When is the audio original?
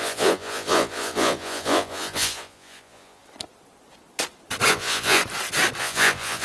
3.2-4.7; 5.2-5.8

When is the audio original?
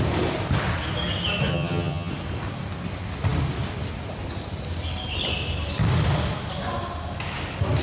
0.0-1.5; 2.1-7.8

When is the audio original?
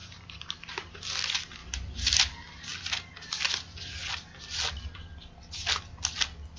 1.0-1.6; 2.2-6.6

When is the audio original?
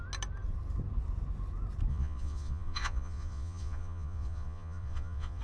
0.0-1.9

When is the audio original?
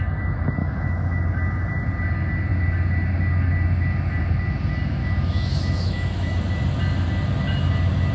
0.0-0.6; 1.2-5.0; 6.4-8.1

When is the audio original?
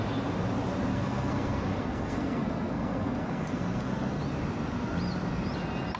0.0-0.9; 4.2-6.0